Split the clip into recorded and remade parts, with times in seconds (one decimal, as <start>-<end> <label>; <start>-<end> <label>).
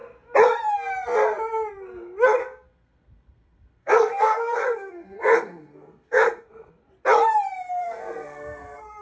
0.0-2.4 recorded; 2.4-6.7 remade; 6.7-7.8 recorded; 7.8-9.0 remade